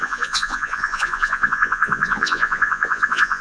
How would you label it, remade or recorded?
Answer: remade